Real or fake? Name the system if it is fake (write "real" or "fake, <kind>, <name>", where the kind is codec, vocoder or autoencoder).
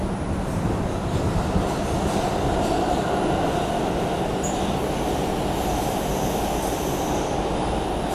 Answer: real